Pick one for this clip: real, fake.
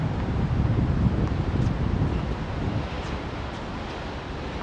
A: real